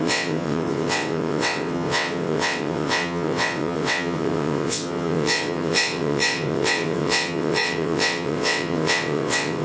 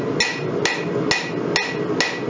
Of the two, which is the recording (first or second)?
second